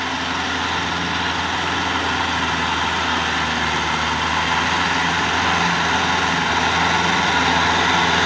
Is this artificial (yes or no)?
no